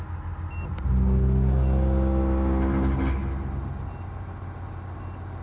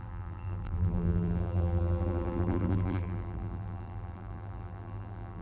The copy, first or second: second